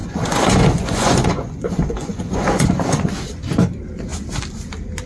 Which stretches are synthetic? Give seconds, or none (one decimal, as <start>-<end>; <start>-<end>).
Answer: 0.0-3.1